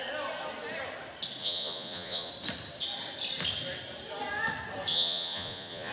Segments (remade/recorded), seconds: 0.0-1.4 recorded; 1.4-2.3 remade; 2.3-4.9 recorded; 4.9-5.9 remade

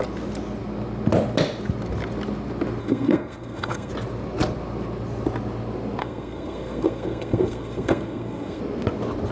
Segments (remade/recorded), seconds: 0.0-2.8 recorded; 2.8-3.9 remade; 3.9-6.0 recorded; 6.0-8.6 remade; 8.6-9.3 recorded

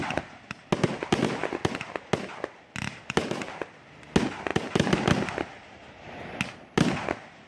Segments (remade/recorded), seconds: 0.0-7.5 recorded

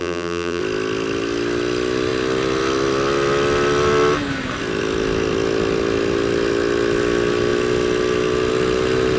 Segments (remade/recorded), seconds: 0.0-0.6 remade; 0.6-9.2 recorded